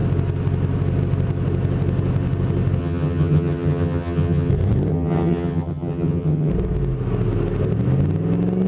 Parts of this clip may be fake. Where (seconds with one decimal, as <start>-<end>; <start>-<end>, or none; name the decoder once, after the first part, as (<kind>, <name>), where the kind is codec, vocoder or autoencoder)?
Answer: 2.8-4.5 (vocoder, HiFi-GAN); 4.9-6.5